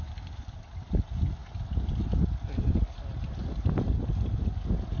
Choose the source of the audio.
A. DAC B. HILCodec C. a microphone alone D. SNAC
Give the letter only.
C